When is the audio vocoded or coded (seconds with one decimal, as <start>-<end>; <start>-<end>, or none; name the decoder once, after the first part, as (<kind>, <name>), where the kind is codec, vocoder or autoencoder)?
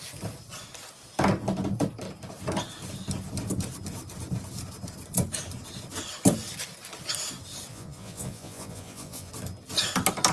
7.7-9.3 (vocoder, Vocos)